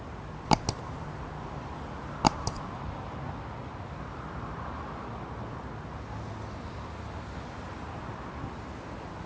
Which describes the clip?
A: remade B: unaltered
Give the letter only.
B